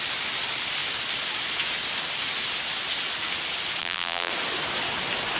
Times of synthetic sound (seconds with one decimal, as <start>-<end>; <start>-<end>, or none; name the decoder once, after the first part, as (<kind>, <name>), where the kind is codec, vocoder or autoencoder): 3.8-4.3 (vocoder, BigVGAN v2)